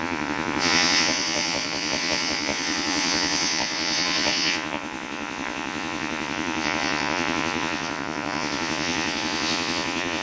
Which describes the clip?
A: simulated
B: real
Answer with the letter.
A